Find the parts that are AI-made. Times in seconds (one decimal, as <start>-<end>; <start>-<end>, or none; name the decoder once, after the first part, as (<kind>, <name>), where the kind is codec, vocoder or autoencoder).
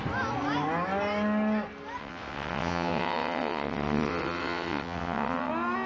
2.0-5.5 (vocoder, WaveNeXt)